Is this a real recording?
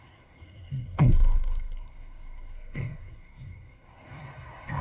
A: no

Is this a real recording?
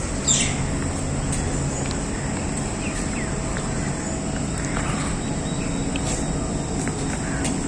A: yes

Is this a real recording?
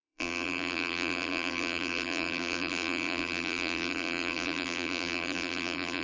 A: no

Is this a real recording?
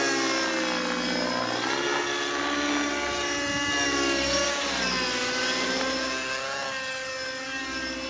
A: yes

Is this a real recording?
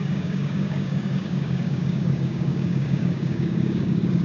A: no